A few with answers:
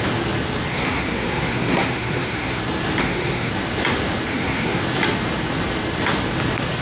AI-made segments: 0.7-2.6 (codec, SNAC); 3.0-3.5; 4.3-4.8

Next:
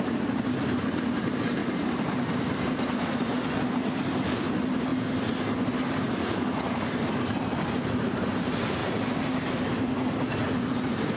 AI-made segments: none

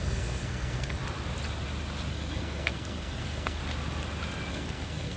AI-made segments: 0.0-1.0 (codec, SNAC); 2.1-3.6; 4.5-5.2

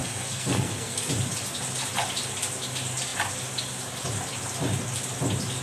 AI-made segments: 0.0-1.1 (codec, SNAC)

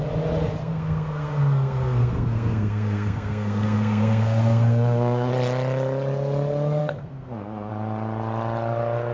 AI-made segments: 0.6-5.3 (codec, SNAC); 6.8-7.7

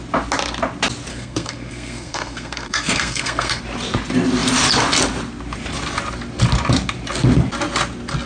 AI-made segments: 1.1-3.6 (codec, SNAC)